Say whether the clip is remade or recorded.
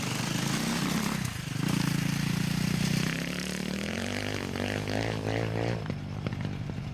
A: recorded